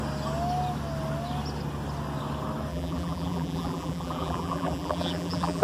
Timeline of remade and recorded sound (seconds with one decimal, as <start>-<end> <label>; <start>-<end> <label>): 0.0-2.7 recorded; 2.7-5.6 remade

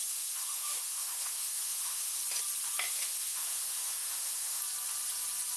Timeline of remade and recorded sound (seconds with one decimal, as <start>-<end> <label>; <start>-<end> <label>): 0.0-2.2 remade; 2.2-2.9 recorded; 2.9-4.6 remade; 4.6-5.6 recorded

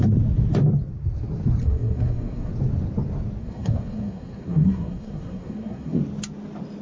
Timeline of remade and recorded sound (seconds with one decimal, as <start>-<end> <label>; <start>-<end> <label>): 0.0-1.6 recorded; 1.6-2.5 remade; 2.5-3.4 recorded; 3.4-6.0 remade; 6.0-6.8 recorded

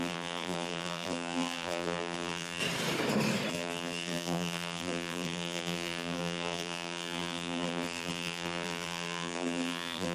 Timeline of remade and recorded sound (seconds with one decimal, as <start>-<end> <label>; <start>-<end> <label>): 0.0-2.6 remade; 2.6-3.5 recorded; 3.5-10.1 remade

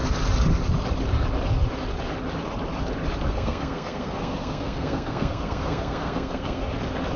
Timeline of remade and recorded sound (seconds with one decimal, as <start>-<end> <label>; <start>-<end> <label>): 0.0-3.3 recorded; 3.3-6.6 remade; 6.6-7.2 recorded

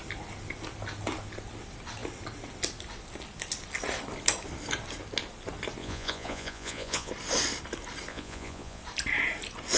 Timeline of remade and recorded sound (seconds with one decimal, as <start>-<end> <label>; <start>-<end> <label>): 0.0-5.8 recorded; 5.8-7.1 remade; 7.1-8.1 recorded; 8.1-8.8 remade; 8.8-9.8 recorded

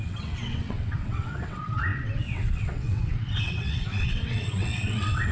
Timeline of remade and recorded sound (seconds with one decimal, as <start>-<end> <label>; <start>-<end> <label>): 0.0-5.3 remade

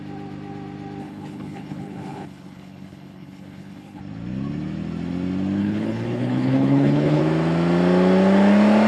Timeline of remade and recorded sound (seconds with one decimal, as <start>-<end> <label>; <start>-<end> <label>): 0.0-1.0 recorded; 1.0-4.0 remade; 4.0-5.6 recorded; 5.6-7.2 remade; 7.2-8.9 recorded